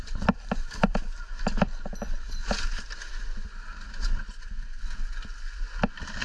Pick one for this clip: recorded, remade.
recorded